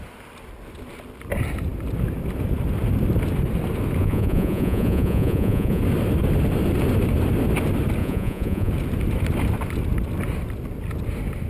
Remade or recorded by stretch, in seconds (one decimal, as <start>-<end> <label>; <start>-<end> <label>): 0.0-4.0 recorded; 4.0-5.8 remade; 5.8-8.0 recorded; 8.0-8.7 remade; 8.7-11.5 recorded